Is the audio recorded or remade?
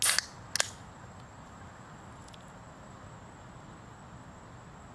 recorded